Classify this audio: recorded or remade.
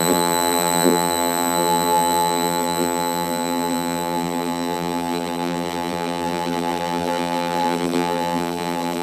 remade